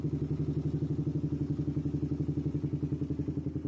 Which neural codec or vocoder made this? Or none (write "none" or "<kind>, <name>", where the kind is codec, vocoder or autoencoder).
none